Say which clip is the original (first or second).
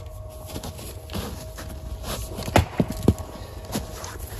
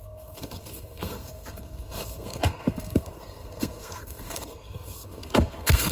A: first